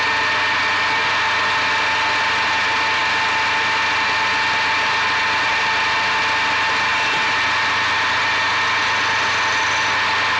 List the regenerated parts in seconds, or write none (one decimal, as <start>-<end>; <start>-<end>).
none